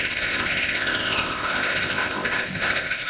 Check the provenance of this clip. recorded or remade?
remade